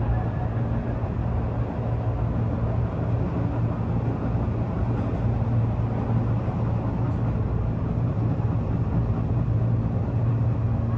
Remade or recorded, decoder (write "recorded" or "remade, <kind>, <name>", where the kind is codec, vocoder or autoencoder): recorded